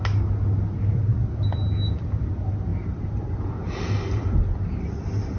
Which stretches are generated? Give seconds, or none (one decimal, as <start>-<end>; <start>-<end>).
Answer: 2.7-3.4